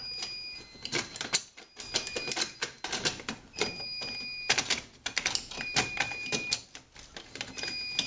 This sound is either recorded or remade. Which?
recorded